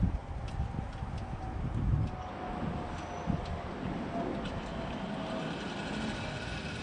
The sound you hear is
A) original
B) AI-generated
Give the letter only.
A